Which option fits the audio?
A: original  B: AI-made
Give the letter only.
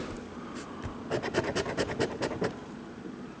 A